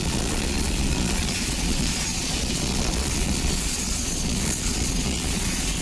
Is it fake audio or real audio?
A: fake